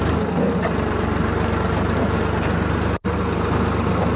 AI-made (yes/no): no